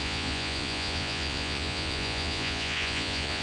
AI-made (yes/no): yes